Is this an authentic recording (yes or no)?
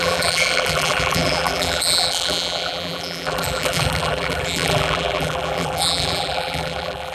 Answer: no